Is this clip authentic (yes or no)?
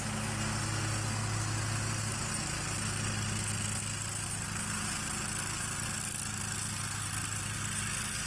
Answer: yes